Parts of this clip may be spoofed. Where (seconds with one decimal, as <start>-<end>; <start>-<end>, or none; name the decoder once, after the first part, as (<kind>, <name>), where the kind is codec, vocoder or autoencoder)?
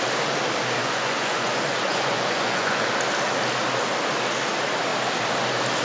0.8-2.9 (vocoder, Vocos)